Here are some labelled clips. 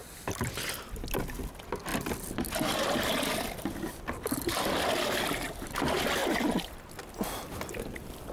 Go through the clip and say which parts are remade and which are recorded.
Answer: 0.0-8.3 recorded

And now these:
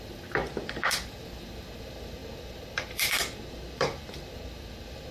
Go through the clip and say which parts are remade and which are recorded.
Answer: 0.0-0.4 remade; 0.4-1.0 recorded; 1.0-5.1 remade